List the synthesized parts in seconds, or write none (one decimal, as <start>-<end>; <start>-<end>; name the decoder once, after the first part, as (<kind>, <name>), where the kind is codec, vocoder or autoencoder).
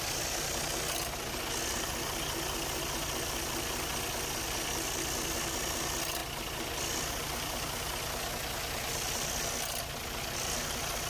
none